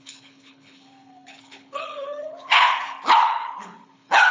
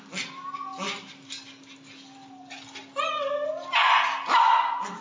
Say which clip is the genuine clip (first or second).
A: second